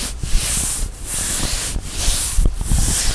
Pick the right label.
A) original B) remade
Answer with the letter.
A